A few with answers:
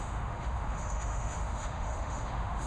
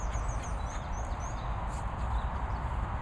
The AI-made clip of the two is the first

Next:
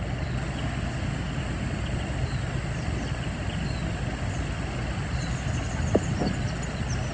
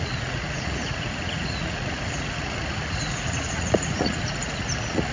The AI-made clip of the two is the second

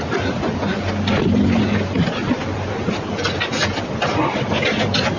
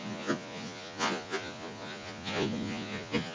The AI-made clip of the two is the second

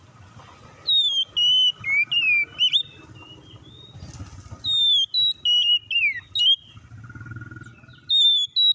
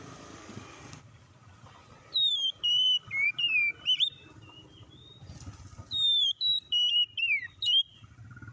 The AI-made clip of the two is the second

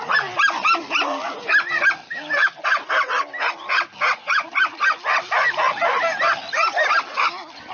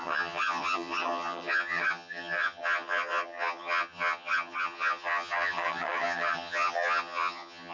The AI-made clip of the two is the second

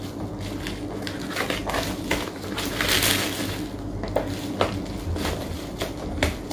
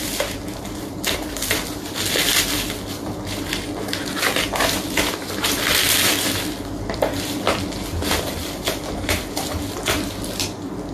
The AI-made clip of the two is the second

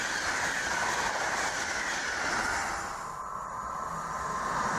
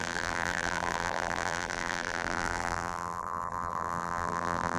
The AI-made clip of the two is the second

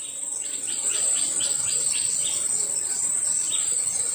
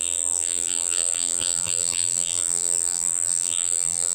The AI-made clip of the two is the second